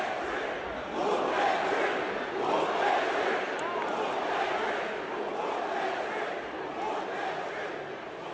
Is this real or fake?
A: real